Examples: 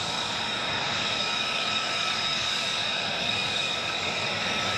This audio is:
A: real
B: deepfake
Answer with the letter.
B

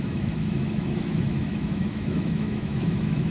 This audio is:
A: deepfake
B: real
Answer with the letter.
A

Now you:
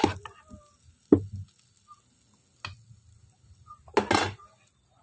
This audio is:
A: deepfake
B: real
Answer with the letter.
B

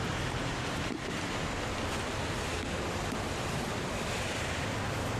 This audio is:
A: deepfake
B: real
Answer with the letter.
B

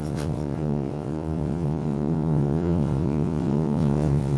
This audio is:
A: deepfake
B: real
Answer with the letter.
A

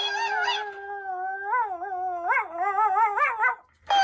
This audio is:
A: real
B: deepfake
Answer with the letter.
A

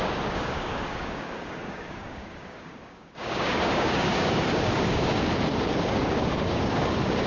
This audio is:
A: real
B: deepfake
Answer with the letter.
B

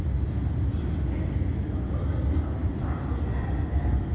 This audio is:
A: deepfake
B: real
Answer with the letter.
B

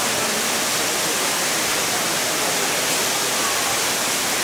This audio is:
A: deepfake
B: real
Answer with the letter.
B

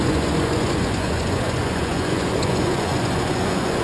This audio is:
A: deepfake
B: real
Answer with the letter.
A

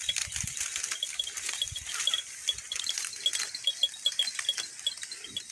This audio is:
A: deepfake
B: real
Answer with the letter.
A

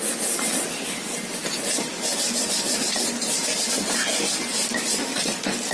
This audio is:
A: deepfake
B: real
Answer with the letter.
B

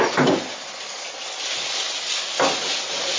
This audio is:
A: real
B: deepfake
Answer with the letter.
A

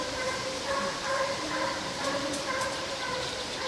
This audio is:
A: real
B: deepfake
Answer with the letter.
B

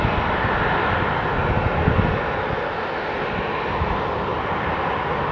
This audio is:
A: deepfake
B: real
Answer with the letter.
B